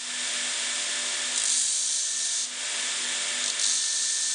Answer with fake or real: real